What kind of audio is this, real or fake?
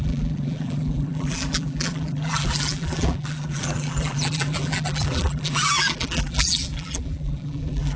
fake